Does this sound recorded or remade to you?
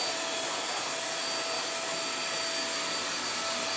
recorded